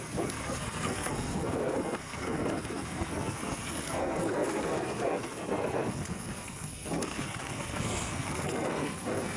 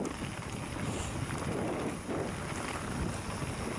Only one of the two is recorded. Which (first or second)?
second